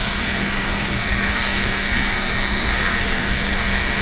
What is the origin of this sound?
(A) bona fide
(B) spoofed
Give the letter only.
B